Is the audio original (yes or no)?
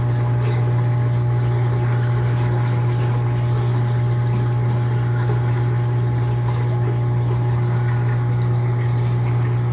yes